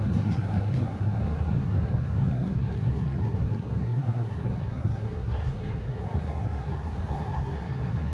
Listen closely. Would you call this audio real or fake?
fake